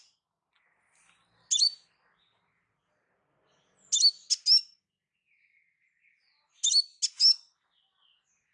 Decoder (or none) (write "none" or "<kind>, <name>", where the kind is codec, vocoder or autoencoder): none